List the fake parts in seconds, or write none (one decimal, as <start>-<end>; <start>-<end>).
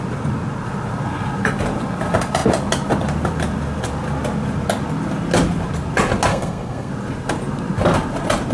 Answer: 6.3-6.9